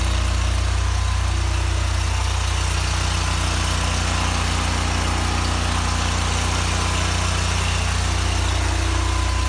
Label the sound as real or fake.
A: real